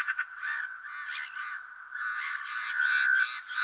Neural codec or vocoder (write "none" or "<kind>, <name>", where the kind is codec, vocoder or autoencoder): none